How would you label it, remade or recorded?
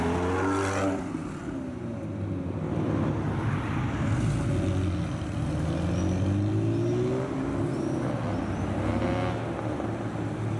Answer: recorded